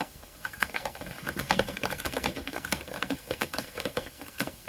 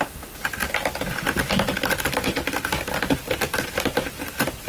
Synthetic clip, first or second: first